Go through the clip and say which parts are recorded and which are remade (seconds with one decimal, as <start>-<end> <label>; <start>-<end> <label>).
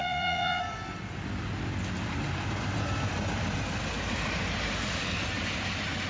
0.0-0.6 remade; 0.6-6.1 recorded